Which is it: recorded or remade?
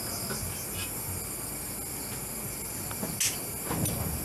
recorded